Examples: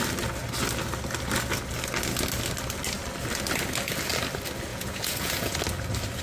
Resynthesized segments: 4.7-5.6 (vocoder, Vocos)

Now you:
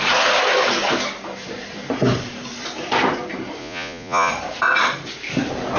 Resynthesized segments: 3.6-4.3 (vocoder, Vocos)

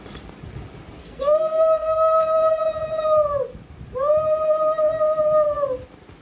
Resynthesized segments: 1.0-2.6 (codec, SNAC)

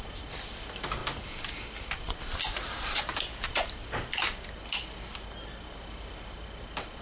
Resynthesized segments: 1.0-4.5 (vocoder, BigVGAN v2)